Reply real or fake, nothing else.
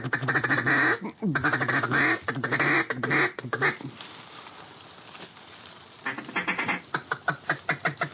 real